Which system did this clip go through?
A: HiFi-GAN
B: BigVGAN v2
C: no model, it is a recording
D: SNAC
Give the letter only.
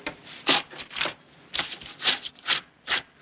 C